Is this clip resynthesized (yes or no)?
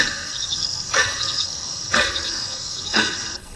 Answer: yes